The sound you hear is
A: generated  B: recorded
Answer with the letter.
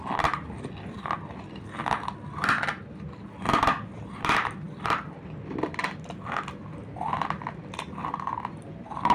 B